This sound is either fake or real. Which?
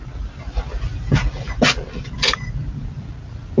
real